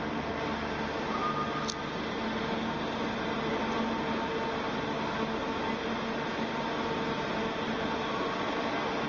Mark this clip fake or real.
real